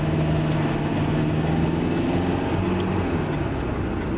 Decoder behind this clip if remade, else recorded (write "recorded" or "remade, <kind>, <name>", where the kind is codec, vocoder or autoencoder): recorded